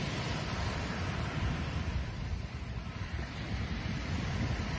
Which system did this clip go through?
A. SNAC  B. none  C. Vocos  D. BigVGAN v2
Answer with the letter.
D